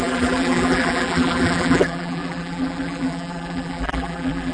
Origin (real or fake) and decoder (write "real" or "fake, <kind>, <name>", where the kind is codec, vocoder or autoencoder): fake, vocoder, BigVGAN v2